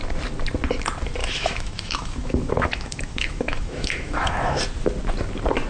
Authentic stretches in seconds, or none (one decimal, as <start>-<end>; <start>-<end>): 0.0-1.2; 4.6-5.7